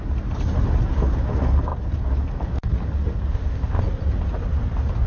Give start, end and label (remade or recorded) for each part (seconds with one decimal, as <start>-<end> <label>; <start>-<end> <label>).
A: 0.0-3.3 recorded; 3.3-3.8 remade; 3.8-5.1 recorded